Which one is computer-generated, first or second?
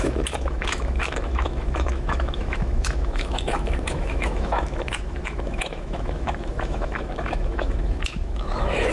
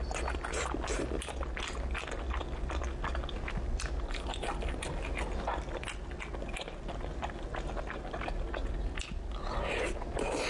first